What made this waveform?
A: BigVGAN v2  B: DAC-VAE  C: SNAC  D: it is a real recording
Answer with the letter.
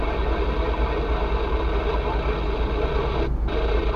D